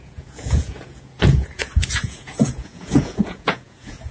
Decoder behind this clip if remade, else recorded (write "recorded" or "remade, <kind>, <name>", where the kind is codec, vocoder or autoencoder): remade, vocoder, Vocos